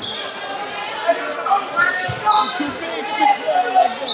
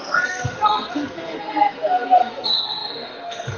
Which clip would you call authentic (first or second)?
first